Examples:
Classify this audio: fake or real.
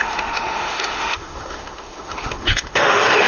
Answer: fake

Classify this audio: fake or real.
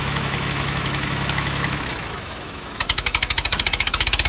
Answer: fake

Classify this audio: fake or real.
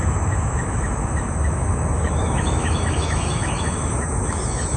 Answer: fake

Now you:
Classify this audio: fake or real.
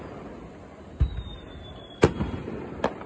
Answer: real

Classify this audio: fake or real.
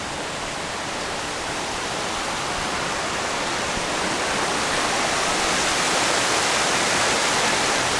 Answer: real